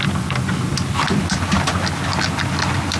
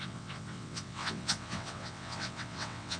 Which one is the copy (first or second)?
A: second